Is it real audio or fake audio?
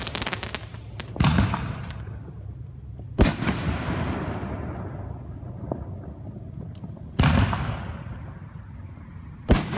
real